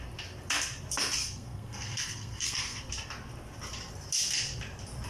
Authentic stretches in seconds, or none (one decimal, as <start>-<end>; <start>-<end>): 0.0-1.2; 2.9-5.1